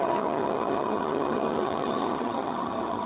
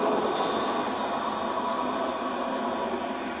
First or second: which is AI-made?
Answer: first